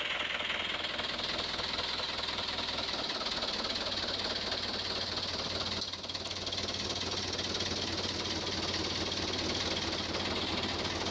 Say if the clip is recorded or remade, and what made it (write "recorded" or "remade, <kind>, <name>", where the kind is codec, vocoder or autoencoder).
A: recorded